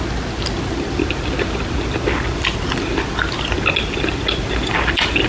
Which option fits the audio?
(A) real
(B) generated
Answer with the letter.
A